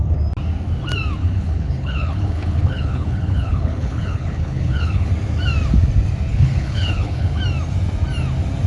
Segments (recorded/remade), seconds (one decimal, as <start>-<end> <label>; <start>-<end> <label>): 0.0-1.2 recorded; 1.2-5.1 remade; 5.1-6.3 recorded; 6.3-7.4 remade; 7.4-8.7 recorded